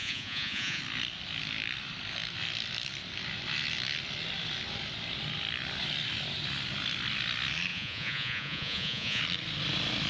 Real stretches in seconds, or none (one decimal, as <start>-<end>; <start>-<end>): 0.8-7.7; 9.2-10.1